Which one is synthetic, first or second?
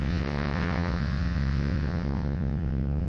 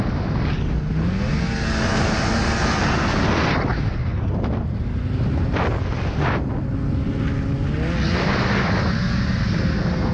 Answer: first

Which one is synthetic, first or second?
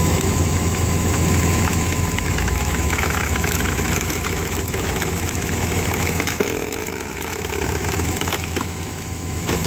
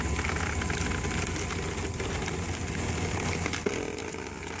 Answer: first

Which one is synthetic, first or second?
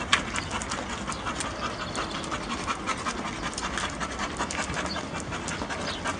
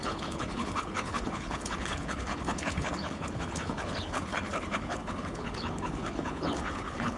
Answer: second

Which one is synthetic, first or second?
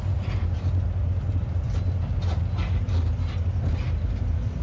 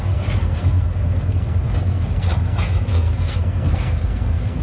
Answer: second